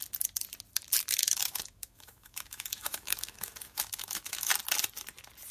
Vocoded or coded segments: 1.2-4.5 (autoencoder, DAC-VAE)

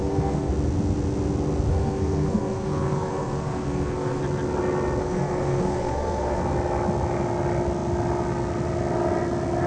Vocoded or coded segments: 0.0-0.5 (codec, SNAC); 1.7-4.2; 5.0-6.4

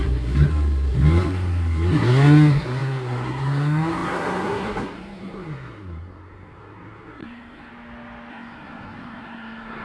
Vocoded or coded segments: 0.0-7.7 (codec, SNAC); 8.3-9.8

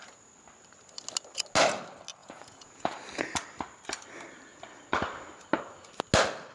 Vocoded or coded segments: 2.2-2.9 (vocoder, Vocos)

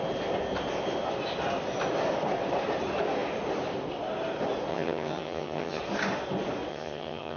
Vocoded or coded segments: 4.7-5.8 (vocoder, HiFi-GAN); 6.7-7.4